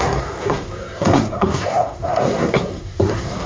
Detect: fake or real fake